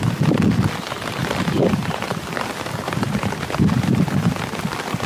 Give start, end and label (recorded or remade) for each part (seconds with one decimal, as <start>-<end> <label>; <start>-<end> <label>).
0.0-1.2 recorded; 1.2-4.3 remade; 4.3-5.1 recorded